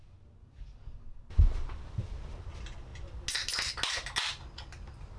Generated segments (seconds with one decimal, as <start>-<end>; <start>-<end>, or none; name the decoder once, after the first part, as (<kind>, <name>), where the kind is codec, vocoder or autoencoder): 0.4-1.3 (codec, DAC)